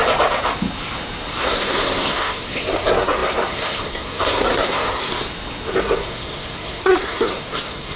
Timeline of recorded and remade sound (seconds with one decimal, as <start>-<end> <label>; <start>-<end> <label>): 0.0-1.4 recorded; 1.4-5.1 remade; 5.1-5.7 recorded; 5.7-8.0 remade